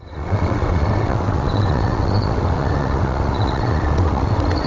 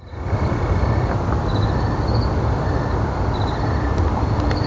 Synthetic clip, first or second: first